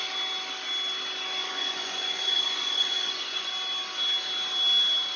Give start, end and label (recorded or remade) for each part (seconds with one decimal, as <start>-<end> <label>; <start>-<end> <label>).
0.0-1.4 recorded; 1.4-3.5 remade; 3.5-5.2 recorded

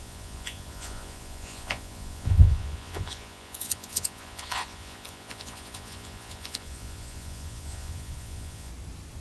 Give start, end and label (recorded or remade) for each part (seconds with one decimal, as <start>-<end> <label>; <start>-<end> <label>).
0.0-8.7 remade; 8.7-9.2 recorded

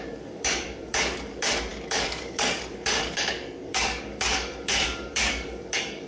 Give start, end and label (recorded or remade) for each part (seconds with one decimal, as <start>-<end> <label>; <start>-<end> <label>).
0.0-6.1 remade